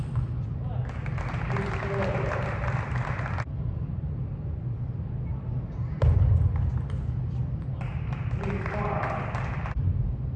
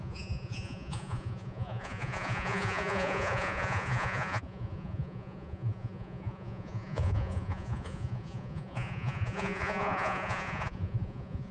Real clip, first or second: first